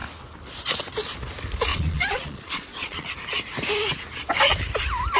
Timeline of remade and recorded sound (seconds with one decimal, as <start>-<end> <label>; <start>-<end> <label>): 0.0-1.7 recorded; 1.7-3.1 remade; 3.1-5.2 recorded